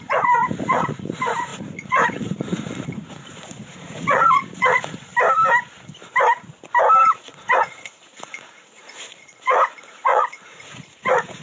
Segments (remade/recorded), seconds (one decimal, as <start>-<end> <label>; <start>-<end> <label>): 0.0-5.1 remade; 5.1-7.0 recorded; 7.0-11.4 remade